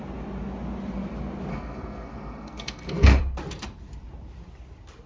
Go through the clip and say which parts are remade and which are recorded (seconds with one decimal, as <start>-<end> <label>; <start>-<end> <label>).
0.0-1.5 recorded; 1.5-3.2 remade; 3.2-5.1 recorded